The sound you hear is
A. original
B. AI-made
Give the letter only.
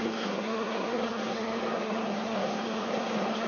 B